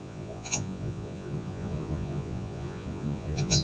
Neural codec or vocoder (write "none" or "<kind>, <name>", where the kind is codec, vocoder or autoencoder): vocoder, Vocos